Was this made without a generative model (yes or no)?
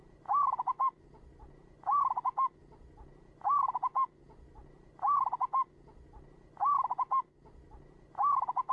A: yes